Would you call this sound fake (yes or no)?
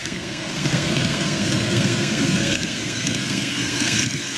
yes